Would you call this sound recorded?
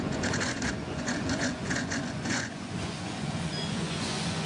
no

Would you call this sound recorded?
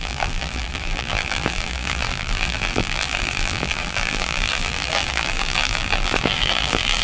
no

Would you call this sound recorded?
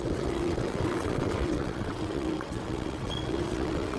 no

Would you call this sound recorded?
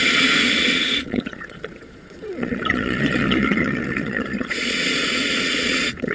no